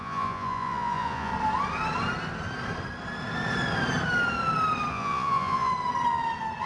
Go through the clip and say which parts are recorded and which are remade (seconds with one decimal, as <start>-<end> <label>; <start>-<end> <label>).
0.0-1.3 remade; 1.3-4.9 recorded; 4.9-5.7 remade; 5.7-6.7 recorded